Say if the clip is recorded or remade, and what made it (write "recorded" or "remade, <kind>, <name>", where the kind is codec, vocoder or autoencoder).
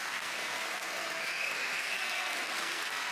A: remade, codec, SNAC